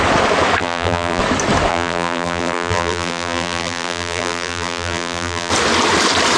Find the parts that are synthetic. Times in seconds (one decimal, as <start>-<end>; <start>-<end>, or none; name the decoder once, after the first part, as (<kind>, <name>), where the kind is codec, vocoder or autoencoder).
0.6-1.2 (vocoder, BigVGAN v2); 1.7-5.5